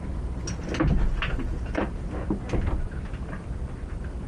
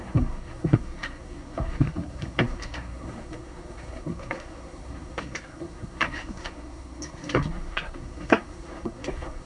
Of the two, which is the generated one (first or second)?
second